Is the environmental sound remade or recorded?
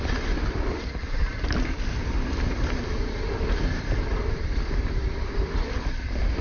recorded